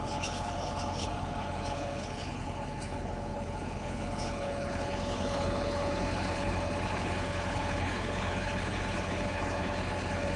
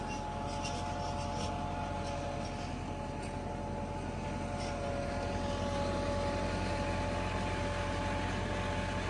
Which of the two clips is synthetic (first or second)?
first